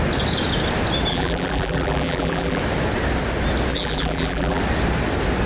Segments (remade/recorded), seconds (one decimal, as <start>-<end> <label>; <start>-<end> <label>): 0.0-1.1 recorded; 1.1-2.6 remade; 2.6-3.7 recorded; 3.7-4.6 remade; 4.6-5.5 recorded